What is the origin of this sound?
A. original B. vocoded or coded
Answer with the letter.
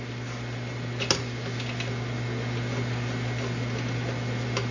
A